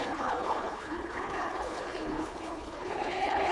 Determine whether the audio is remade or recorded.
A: remade